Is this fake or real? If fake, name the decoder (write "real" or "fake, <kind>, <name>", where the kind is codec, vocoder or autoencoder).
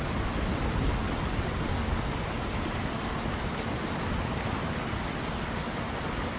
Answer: real